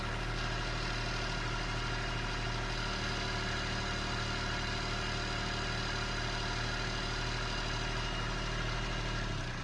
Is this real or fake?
real